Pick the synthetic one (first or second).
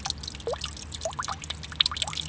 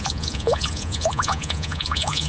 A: second